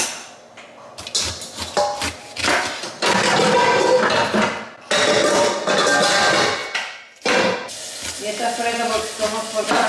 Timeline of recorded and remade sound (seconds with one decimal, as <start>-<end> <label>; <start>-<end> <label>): 0.0-9.9 recorded

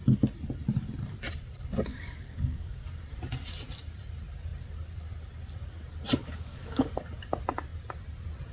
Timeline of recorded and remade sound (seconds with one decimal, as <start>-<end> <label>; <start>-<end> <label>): 0.0-1.9 recorded; 1.9-2.9 remade; 2.9-6.2 recorded; 6.2-6.9 remade; 6.9-8.5 recorded

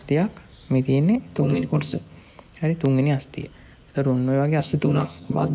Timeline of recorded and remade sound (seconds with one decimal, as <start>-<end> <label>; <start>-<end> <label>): 0.0-1.2 recorded; 1.2-2.2 remade; 2.2-4.6 recorded; 4.6-5.5 remade